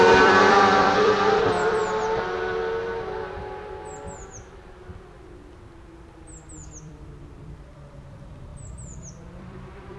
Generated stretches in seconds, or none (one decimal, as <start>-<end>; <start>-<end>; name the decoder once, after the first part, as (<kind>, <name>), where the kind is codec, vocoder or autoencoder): 0.0-1.8 (vocoder, BigVGAN v2); 6.8-10.0